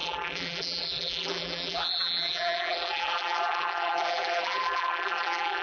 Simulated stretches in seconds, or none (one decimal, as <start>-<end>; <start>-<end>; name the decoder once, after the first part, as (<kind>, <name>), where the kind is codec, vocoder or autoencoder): 0.0-5.6 (vocoder, BigVGAN v2)